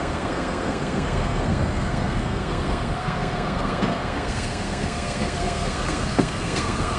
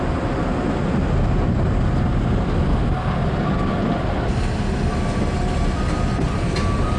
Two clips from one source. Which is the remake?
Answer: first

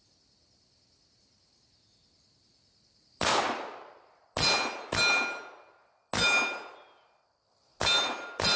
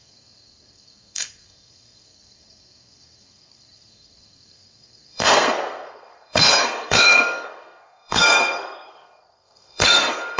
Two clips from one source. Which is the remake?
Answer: second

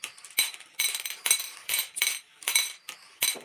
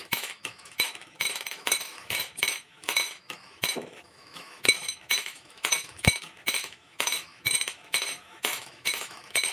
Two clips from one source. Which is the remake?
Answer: second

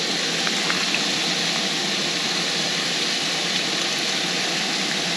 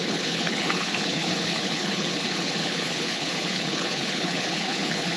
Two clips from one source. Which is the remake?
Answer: second